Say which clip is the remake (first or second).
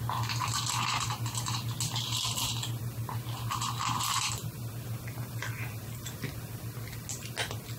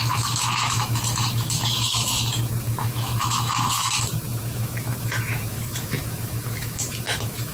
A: second